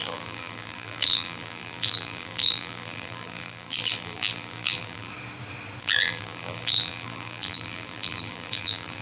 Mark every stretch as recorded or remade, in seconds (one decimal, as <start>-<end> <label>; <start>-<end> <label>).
0.0-5.1 remade; 5.1-5.8 recorded; 5.8-9.0 remade